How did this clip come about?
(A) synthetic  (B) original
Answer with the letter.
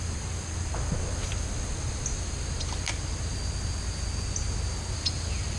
B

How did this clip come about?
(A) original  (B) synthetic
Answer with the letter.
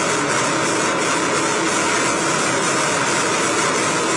A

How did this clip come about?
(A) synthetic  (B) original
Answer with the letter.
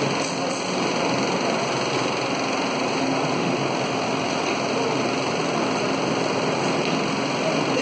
B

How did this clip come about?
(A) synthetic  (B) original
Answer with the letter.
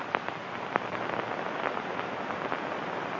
B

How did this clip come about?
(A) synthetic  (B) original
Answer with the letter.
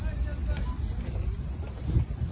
B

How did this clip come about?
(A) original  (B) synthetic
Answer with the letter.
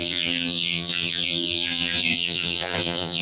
B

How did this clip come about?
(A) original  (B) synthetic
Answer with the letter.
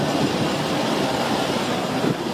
A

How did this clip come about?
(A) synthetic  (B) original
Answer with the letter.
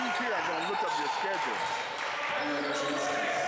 B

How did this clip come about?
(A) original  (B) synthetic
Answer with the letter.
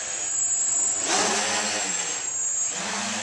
A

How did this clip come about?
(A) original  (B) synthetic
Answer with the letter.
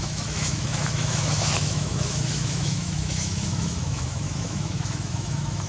B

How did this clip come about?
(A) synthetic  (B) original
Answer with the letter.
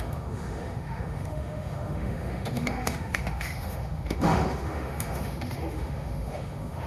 A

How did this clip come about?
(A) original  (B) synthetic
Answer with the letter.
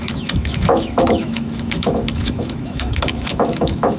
B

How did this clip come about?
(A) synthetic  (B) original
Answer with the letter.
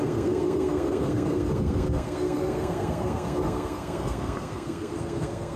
A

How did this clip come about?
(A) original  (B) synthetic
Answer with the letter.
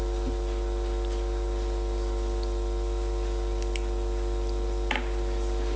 A